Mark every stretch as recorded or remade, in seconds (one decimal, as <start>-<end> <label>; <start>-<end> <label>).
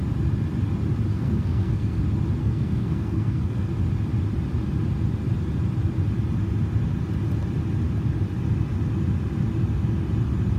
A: 0.0-1.1 recorded; 1.1-2.0 remade; 2.0-2.4 recorded; 2.4-3.7 remade; 3.7-10.6 recorded